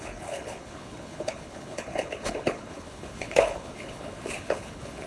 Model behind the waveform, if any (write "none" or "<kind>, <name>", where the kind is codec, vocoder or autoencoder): codec, HILCodec